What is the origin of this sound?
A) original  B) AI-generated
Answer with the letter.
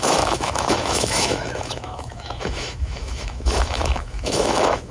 B